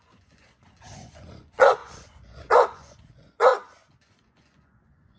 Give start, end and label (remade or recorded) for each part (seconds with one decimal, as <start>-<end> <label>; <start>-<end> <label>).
0.0-5.2 remade